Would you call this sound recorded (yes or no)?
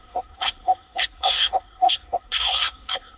no